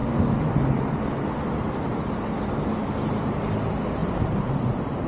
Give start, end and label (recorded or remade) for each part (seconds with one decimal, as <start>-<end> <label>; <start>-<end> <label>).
0.0-3.1 recorded; 3.1-5.1 remade